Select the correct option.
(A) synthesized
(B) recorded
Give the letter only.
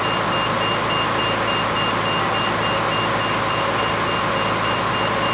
B